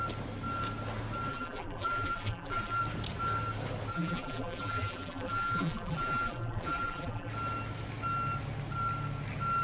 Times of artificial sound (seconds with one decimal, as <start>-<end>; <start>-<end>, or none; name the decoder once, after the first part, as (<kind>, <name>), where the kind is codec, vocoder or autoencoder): 1.3-2.8 (vocoder, BigVGAN v2); 3.9-7.3